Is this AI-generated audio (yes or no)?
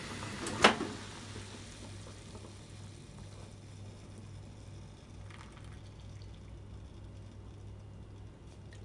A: no